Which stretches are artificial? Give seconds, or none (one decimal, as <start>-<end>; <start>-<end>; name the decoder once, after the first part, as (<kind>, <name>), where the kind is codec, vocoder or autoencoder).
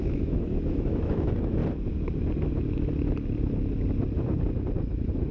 0.0-1.6 (autoencoder, DAC-VAE); 4.8-5.3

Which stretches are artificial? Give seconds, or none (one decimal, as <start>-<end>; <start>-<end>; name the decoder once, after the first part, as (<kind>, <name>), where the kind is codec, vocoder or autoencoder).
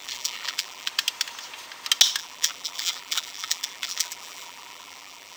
0.0-0.9 (vocoder, BigVGAN v2); 2.2-5.4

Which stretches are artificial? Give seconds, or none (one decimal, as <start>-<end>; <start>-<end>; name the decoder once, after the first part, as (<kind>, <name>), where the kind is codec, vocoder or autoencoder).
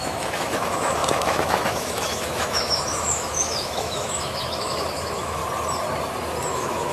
0.0-5.4 (autoencoder, DAC-VAE); 6.5-6.9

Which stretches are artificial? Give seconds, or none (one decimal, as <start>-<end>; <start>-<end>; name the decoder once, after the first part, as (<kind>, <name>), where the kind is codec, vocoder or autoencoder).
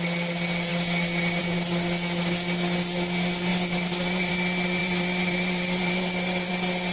3.5-4.3 (vocoder, BigVGAN v2); 4.8-6.5